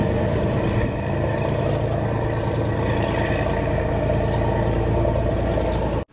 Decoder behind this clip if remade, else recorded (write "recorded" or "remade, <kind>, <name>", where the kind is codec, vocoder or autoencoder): recorded